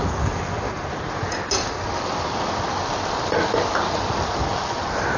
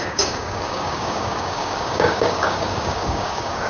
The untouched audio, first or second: first